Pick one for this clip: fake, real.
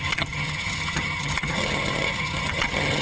fake